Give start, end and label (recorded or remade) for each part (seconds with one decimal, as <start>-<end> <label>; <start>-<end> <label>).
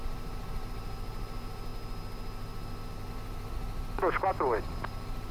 0.0-1.7 remade; 1.7-3.1 recorded; 3.1-5.3 remade